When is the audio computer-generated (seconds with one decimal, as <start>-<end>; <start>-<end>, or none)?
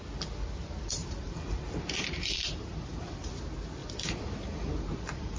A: 1.0-3.0; 3.8-5.4